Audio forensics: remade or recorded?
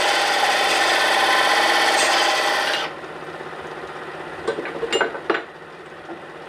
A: recorded